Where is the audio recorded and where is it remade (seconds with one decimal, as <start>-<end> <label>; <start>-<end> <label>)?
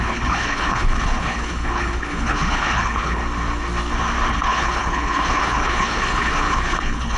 0.0-3.2 remade; 3.2-4.3 recorded; 4.3-7.2 remade